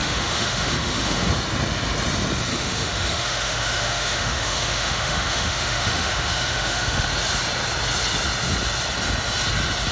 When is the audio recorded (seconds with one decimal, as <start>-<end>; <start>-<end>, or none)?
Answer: 1.3-2.5; 7.1-9.9

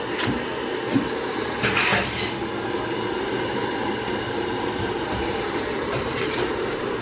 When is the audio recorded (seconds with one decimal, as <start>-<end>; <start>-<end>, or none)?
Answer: 1.9-3.2